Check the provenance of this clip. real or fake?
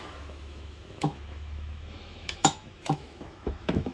fake